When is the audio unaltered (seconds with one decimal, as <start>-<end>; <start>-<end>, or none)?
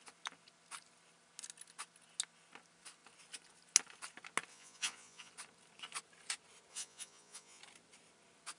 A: 0.0-4.5; 5.3-6.7; 7.6-8.6